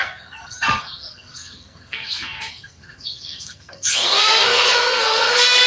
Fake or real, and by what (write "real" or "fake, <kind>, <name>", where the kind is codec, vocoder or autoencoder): fake, codec, SNAC